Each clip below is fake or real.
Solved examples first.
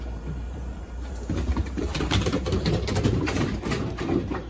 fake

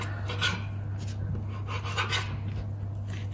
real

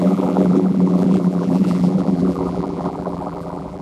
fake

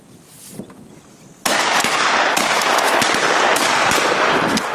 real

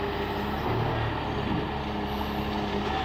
real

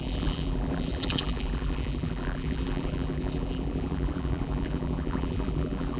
fake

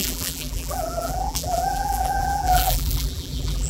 fake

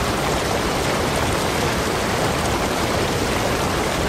real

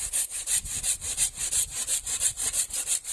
fake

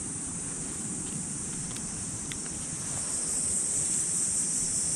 fake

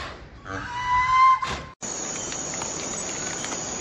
real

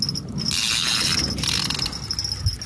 real